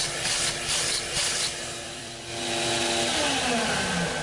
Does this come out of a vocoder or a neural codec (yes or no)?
yes